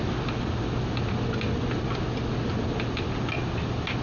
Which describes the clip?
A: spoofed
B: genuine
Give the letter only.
B